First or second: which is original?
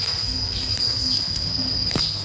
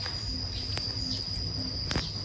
second